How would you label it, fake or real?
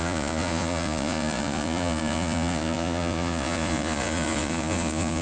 fake